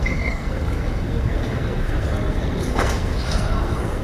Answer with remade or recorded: remade